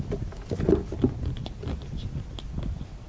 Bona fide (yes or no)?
yes